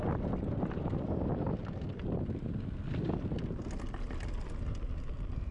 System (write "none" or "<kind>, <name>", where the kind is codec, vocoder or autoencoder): none